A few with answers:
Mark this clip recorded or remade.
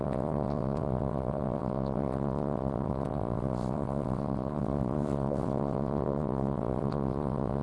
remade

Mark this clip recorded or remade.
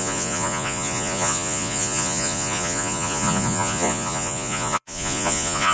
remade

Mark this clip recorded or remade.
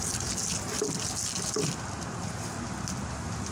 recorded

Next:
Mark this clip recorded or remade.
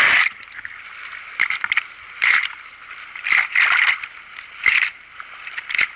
recorded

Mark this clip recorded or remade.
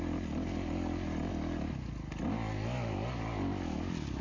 recorded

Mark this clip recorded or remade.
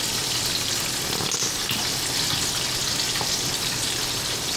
recorded